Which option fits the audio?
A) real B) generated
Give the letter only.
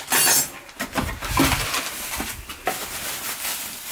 A